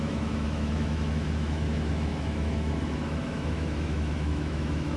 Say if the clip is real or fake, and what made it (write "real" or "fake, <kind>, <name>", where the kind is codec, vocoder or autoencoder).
fake, autoencoder, DAC-VAE